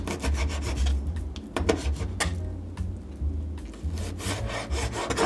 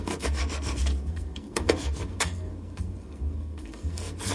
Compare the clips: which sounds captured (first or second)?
first